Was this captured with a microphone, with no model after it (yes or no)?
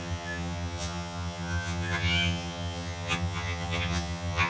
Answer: no